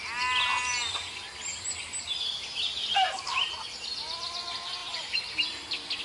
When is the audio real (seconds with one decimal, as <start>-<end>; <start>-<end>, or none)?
0.0-6.0